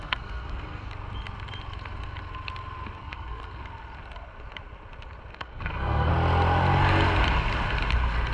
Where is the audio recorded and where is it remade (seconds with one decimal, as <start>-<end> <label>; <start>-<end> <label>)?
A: 0.0-0.9 remade; 0.9-3.0 recorded; 3.0-3.6 remade; 3.6-5.3 recorded; 5.3-6.1 remade; 6.1-8.3 recorded